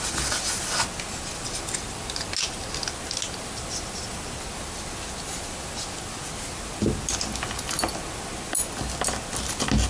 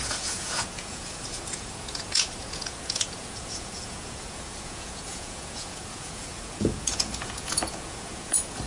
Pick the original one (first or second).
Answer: first